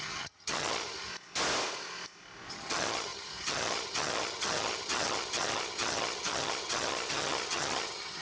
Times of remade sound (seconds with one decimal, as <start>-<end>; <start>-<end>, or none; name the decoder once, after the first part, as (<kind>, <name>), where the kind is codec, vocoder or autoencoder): 0.0-1.1 (vocoder, HiFi-GAN); 2.5-8.2